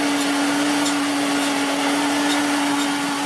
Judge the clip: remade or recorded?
recorded